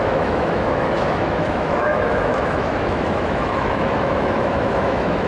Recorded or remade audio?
remade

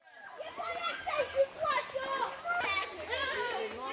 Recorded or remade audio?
recorded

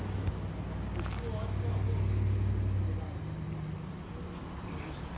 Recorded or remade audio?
recorded